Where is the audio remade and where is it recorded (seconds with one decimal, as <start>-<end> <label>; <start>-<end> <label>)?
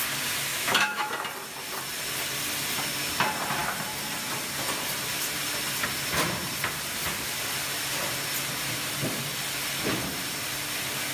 0.0-0.5 recorded; 0.5-1.1 remade; 1.1-11.1 recorded